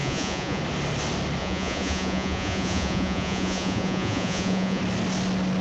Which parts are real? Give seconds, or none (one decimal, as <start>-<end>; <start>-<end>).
0.6-1.4; 4.8-5.6